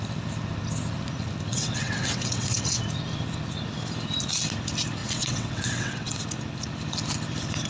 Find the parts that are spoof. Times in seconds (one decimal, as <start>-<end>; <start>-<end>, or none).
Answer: 1.5-2.8; 5.0-6.2